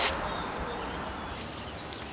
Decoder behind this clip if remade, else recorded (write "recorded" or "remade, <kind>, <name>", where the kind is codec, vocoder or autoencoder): recorded